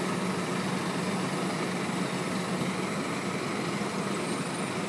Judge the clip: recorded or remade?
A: recorded